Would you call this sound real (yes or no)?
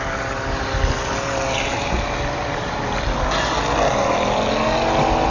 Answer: yes